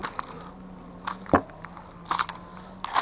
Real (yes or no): yes